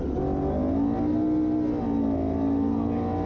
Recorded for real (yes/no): yes